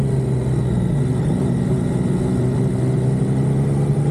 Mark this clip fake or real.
real